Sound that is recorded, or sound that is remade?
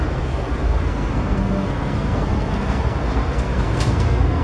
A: remade